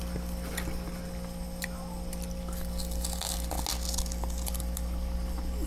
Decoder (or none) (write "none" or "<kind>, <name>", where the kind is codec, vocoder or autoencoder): none